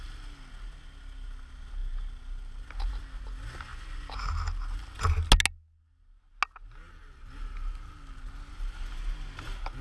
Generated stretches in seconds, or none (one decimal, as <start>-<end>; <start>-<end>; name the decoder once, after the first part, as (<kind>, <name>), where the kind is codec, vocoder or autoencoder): none